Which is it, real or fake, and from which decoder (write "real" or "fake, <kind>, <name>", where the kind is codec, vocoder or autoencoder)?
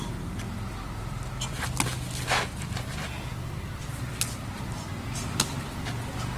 real